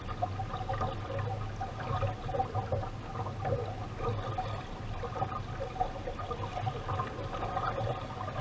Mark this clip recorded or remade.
recorded